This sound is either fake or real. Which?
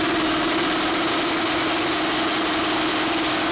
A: real